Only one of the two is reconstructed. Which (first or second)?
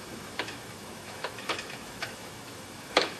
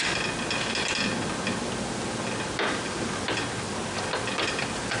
first